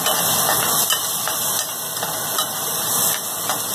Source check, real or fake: real